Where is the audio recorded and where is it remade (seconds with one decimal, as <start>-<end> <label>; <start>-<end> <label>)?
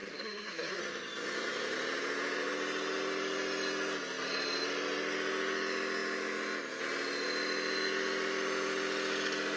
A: 0.0-0.8 remade; 0.8-9.6 recorded